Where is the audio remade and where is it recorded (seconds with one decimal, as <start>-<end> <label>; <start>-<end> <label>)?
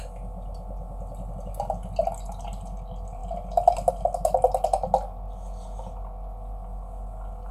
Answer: 0.0-7.5 recorded